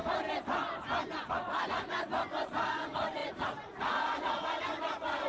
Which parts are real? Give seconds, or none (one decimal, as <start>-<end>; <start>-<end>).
0.0-1.3; 2.1-2.7